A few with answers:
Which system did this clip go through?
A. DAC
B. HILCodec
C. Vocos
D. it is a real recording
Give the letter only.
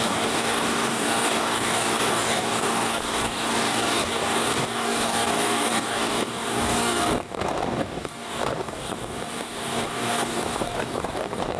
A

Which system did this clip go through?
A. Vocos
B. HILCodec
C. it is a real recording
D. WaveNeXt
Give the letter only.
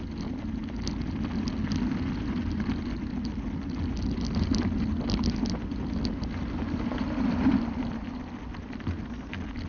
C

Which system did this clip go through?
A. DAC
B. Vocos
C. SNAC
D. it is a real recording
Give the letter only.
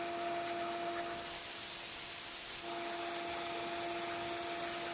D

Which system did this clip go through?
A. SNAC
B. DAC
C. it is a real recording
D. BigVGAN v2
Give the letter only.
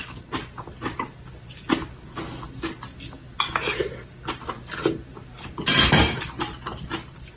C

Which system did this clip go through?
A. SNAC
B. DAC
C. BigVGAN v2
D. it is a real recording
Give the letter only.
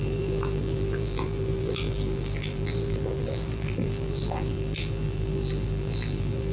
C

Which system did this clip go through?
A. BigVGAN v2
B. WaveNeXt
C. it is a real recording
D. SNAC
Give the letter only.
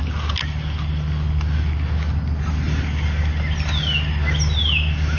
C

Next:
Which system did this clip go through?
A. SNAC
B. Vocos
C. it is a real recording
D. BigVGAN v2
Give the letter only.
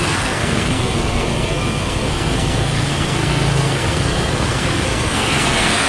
A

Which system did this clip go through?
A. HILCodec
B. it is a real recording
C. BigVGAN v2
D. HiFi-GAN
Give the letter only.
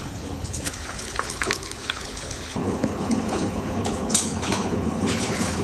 A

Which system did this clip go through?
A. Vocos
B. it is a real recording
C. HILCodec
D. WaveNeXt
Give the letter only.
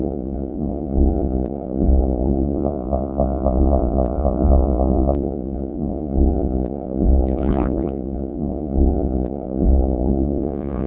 A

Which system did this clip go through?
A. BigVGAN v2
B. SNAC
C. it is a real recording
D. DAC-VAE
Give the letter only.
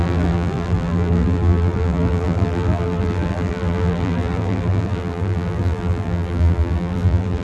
A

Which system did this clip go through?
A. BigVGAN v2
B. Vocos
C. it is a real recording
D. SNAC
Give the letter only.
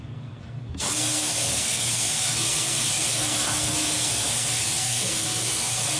D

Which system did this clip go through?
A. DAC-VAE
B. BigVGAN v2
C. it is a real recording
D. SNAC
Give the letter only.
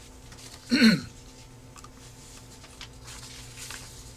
C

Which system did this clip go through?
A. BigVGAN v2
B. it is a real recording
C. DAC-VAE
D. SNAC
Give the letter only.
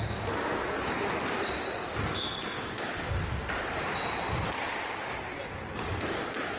B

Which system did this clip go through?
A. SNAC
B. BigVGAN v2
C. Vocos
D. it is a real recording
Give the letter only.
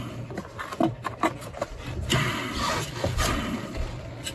B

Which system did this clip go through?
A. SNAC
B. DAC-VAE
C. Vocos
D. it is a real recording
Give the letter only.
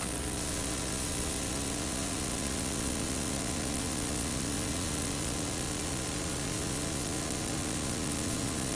C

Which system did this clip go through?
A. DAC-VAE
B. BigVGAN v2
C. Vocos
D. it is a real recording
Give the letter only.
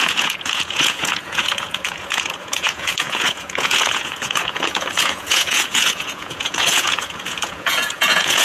C